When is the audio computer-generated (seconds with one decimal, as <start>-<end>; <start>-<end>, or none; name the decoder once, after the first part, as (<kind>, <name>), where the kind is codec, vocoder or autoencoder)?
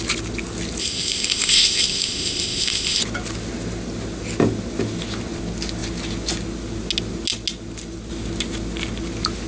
0.8-3.0 (codec, ZipCodec)